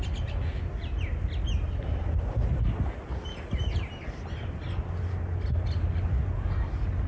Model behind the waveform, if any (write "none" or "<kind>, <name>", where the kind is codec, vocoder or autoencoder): none